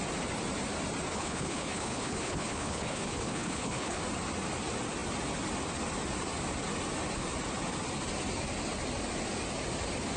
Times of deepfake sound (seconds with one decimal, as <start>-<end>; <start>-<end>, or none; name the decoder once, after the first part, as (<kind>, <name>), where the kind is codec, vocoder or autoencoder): 1.1-4.0 (codec, HILCodec)